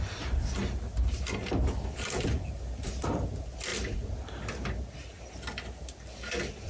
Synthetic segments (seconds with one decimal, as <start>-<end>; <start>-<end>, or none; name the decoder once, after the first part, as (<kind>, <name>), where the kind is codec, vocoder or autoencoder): none